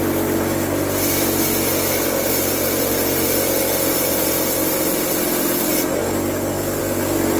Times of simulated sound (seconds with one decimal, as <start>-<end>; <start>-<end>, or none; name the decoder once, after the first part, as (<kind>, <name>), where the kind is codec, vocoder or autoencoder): none